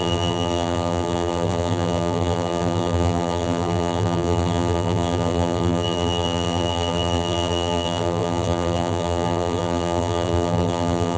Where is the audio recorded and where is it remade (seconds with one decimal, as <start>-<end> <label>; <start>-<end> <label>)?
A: 0.0-11.2 remade